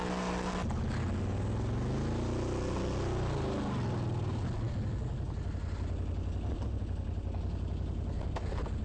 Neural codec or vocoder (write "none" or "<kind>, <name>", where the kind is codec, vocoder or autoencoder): none